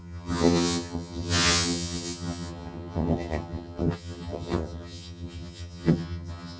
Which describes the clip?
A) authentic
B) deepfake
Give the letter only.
B